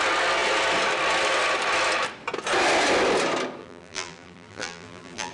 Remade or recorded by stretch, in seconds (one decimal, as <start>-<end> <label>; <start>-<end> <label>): 0.0-3.6 recorded; 3.6-5.3 remade